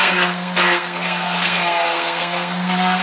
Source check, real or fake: fake